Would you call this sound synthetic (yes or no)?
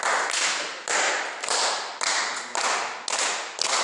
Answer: no